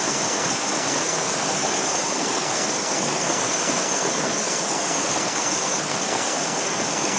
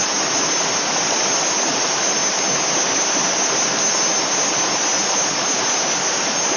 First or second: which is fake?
first